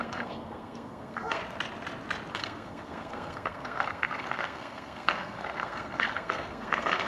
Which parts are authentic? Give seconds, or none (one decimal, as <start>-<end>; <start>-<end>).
1.4-2.3